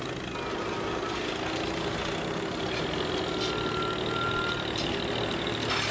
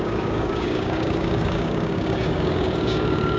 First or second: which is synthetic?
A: second